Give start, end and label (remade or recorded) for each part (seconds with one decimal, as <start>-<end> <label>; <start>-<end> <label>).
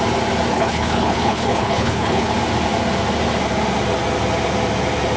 0.0-0.5 recorded; 0.5-2.3 remade; 2.3-5.2 recorded